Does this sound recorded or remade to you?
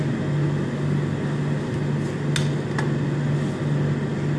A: recorded